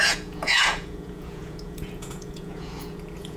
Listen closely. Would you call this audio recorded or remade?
remade